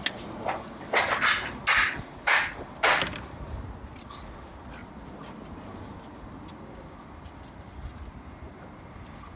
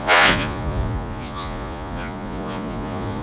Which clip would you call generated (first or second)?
second